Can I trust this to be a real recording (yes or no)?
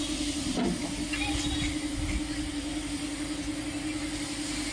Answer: yes